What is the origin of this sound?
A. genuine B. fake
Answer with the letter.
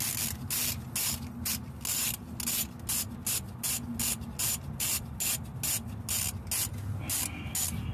A